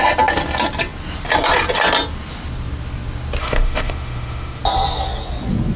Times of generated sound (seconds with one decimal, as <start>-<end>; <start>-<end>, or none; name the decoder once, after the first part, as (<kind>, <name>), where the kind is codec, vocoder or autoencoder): 3.4-4.6 (autoencoder, DAC-VAE)